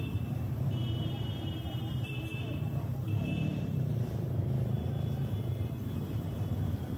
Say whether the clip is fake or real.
fake